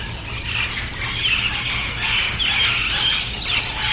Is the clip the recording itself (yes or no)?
yes